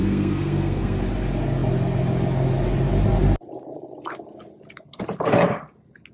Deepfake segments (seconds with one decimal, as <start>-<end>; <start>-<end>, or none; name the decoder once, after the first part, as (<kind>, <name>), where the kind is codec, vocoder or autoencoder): 0.0-1.0 (codec, SNAC)